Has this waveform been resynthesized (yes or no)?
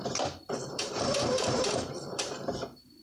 yes